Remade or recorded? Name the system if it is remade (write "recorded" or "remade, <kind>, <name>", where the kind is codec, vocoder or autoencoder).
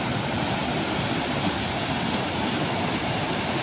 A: recorded